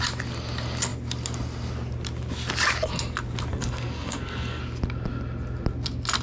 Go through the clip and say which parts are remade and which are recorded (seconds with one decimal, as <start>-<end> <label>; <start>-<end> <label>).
0.0-3.5 recorded; 3.5-4.6 remade; 4.6-6.2 recorded